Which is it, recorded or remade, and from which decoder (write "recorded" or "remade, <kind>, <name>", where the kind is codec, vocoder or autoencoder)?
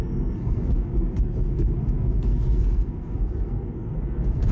remade, codec, SNAC